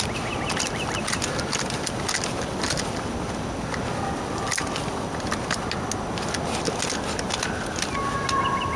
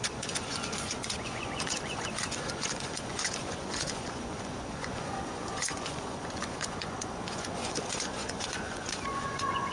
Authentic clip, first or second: first